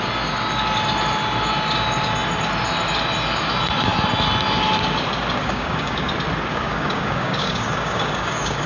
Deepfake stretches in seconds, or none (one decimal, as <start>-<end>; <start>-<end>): 5.4-6.1; 6.5-8.7